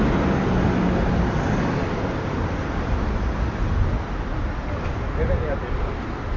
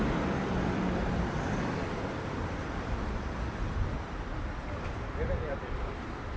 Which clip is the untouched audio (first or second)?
first